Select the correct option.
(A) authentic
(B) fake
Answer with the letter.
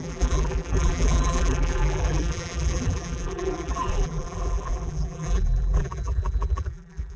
B